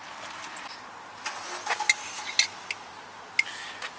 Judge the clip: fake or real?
real